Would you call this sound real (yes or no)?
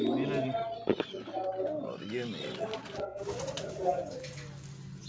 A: yes